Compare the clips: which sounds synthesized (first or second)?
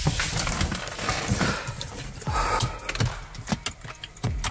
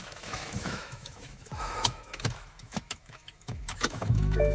second